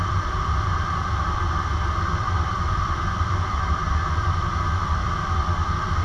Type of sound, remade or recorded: remade